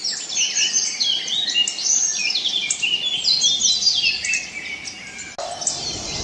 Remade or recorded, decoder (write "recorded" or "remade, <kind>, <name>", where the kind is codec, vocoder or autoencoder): recorded